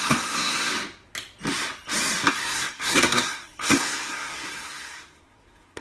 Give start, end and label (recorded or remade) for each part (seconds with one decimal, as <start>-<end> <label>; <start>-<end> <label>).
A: 0.0-0.7 remade; 0.7-2.3 recorded; 2.3-5.8 remade